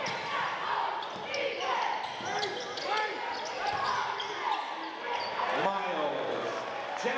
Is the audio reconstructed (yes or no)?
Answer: no